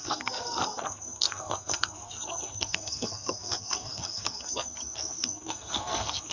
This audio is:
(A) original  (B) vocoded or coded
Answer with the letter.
B